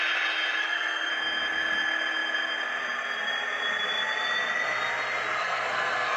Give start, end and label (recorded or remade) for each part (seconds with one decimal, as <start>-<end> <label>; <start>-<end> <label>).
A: 0.0-0.6 recorded; 0.6-1.1 remade; 1.1-5.4 recorded; 5.4-6.2 remade

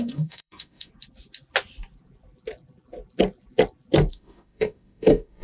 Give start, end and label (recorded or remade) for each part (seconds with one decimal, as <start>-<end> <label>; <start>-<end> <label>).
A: 0.0-0.9 remade; 0.9-4.1 recorded; 4.1-5.4 remade

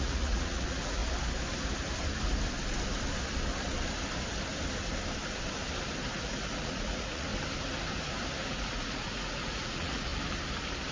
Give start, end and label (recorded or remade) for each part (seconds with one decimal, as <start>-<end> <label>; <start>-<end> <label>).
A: 0.0-1.0 remade; 1.0-6.1 recorded; 6.1-7.3 remade; 7.3-8.5 recorded; 8.5-10.1 remade; 10.1-10.9 recorded